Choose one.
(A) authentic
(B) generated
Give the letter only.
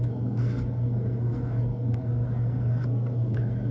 B